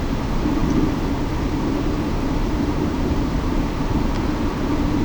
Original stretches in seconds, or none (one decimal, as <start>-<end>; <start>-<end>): 0.0-2.4; 4.1-5.0